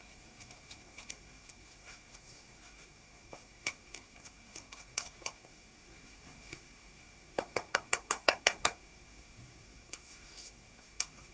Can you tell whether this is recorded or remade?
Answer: remade